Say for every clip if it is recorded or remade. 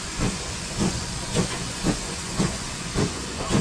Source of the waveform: remade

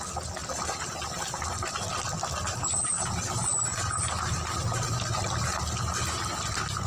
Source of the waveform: recorded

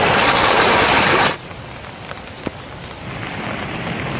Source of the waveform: remade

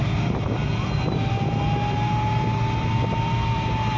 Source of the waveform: recorded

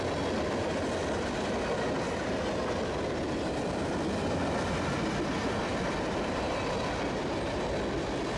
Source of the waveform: recorded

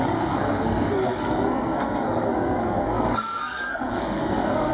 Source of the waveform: remade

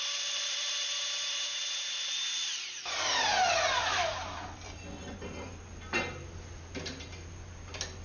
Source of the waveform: recorded